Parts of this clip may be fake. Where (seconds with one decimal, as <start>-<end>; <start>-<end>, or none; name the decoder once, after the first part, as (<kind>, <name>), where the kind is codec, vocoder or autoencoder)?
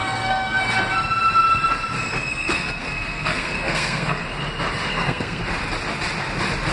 0.0-0.6 (codec, SNAC); 2.3-4.2; 4.9-5.4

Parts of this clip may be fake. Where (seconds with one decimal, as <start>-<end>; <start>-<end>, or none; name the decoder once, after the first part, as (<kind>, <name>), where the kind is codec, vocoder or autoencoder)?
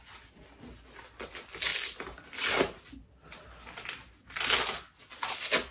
none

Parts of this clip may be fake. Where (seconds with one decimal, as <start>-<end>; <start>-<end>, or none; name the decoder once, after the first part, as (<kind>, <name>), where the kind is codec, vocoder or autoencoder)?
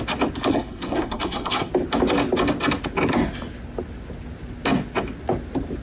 0.5-1.7 (codec, SNAC)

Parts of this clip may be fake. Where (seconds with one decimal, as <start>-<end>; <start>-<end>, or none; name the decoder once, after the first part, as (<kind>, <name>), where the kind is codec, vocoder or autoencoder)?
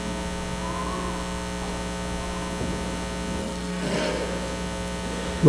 3.4-4.1 (codec, SNAC)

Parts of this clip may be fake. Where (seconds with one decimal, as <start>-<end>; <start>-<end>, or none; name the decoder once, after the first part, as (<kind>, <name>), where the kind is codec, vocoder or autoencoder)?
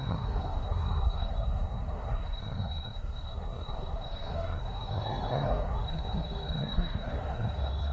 0.0-7.9 (codec, SNAC)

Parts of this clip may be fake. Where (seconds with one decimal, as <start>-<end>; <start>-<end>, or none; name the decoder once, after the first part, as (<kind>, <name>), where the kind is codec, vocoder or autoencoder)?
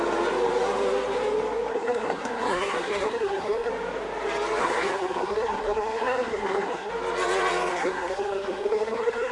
1.7-3.7 (codec, SNAC); 4.6-6.9; 7.7-9.3